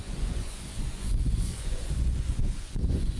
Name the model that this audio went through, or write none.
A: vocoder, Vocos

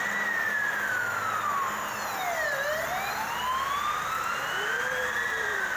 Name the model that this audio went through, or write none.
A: none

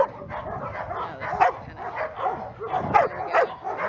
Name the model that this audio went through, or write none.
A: none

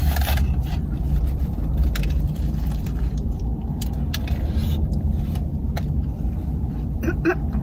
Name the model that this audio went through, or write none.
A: vocoder, BigVGAN v2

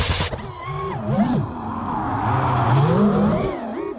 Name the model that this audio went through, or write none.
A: none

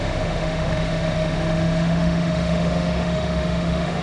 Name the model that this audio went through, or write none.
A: autoencoder, DAC-VAE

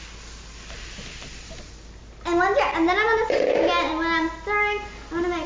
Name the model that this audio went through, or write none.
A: none